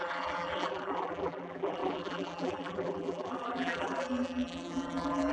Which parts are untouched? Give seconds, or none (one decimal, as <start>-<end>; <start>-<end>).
none